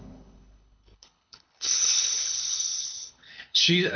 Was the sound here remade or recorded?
remade